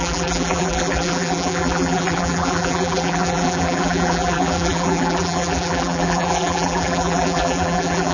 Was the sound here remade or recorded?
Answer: remade